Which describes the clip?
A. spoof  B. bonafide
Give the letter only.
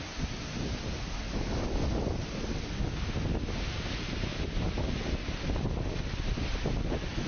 B